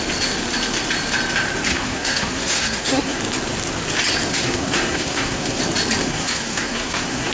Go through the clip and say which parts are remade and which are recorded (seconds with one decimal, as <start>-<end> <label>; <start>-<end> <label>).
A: 0.0-1.7 recorded; 1.7-3.2 remade; 3.2-4.3 recorded; 4.3-5.6 remade; 5.6-6.0 recorded; 6.0-7.3 remade